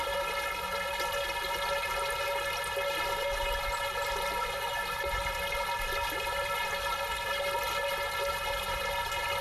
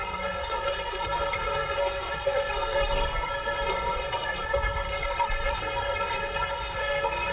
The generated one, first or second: second